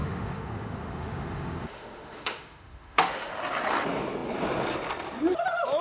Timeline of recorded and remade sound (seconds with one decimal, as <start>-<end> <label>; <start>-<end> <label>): 0.0-3.3 remade; 3.3-5.8 recorded